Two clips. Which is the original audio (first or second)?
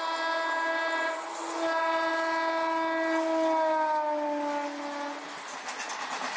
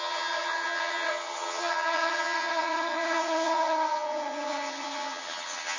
first